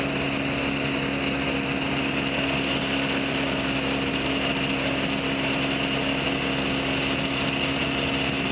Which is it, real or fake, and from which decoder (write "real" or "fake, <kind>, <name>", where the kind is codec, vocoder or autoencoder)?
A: real